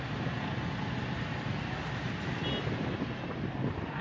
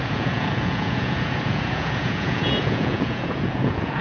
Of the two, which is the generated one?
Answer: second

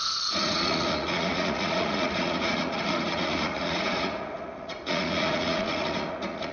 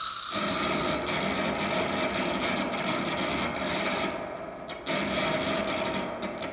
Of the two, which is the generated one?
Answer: first